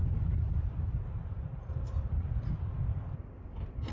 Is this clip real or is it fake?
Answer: real